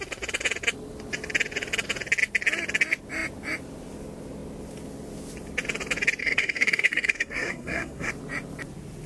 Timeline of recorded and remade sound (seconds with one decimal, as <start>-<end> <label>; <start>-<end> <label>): 0.0-6.2 recorded; 6.2-8.1 remade; 8.1-9.1 recorded